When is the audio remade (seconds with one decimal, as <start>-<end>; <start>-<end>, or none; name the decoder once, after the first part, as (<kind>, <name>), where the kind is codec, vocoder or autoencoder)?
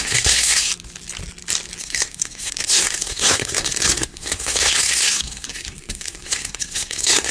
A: 0.0-0.7 (codec, SNAC); 1.8-7.3